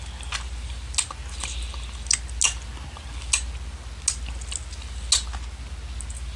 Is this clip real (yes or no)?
yes